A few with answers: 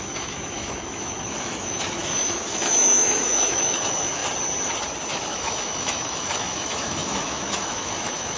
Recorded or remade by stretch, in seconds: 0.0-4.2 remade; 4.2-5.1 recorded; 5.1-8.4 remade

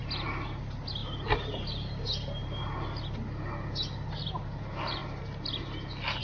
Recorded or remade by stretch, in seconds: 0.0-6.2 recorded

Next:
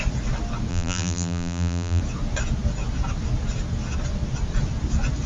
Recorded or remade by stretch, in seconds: 0.0-0.7 recorded; 0.7-2.0 remade; 2.0-5.3 recorded

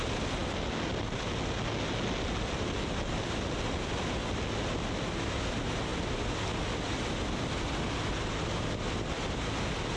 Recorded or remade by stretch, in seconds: 0.0-10.0 recorded

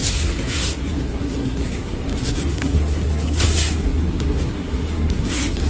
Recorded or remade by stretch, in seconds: 0.0-5.7 remade